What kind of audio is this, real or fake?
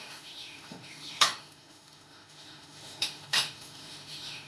fake